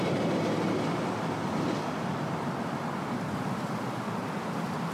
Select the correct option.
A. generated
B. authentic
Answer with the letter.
B